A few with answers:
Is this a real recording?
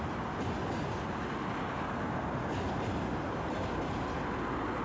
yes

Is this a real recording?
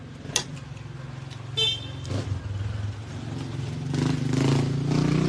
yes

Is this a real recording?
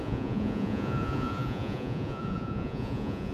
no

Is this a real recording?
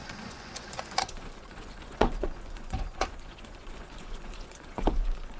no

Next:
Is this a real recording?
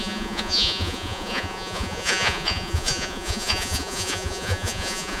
no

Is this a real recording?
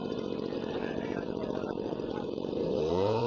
no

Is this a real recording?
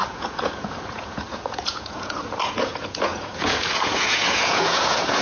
no